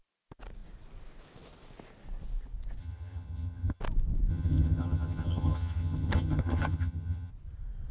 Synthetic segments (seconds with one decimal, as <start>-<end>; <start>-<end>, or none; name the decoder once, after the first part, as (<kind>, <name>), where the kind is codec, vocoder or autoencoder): 2.8-3.8 (vocoder, HiFi-GAN); 4.3-7.3